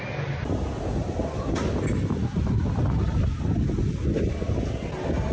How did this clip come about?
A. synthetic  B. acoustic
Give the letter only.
B